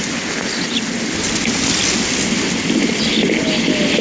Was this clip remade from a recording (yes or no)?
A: no